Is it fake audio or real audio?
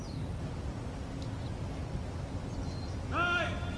real